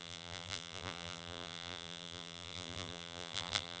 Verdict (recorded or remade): remade